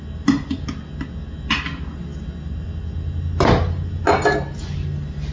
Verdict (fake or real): real